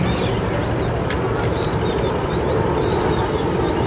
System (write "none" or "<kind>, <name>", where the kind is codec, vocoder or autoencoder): none